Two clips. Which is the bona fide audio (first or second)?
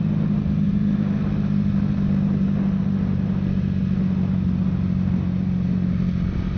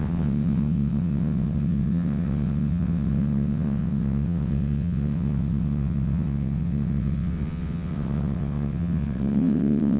first